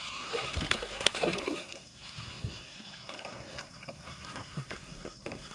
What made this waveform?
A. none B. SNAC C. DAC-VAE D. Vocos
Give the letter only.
B